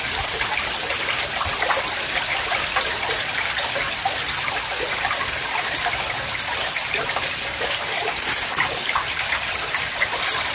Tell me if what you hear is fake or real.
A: fake